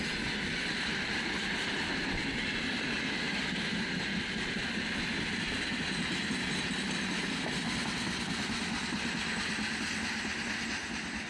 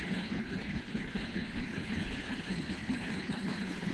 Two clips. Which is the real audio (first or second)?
first